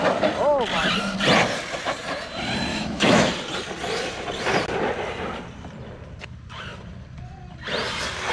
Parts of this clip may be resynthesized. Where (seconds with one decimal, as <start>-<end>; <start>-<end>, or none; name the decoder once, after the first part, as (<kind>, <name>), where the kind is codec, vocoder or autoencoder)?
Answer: 2.7-3.3 (autoencoder, DAC-VAE)